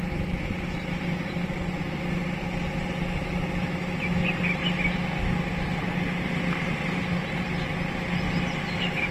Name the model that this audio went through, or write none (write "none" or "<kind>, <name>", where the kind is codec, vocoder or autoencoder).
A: none